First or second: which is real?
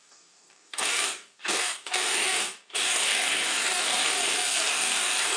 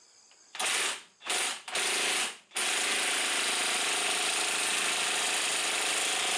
second